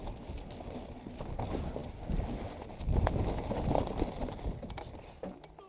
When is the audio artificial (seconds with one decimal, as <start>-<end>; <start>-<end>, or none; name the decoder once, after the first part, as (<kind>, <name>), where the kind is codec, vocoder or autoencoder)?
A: none

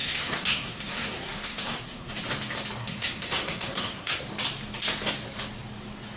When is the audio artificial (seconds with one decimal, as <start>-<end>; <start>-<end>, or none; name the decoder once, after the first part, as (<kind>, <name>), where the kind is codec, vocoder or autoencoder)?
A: 0.0-2.1 (codec, SNAC); 2.8-4.2

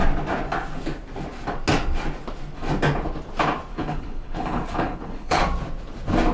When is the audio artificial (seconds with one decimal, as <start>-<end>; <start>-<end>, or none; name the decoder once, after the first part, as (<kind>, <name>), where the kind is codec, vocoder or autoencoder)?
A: 3.7-5.4 (codec, HILCodec)

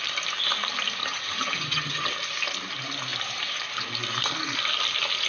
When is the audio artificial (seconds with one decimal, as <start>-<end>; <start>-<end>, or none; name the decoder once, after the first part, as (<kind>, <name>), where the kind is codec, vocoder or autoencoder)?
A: 1.0-2.1 (vocoder, HiFi-GAN)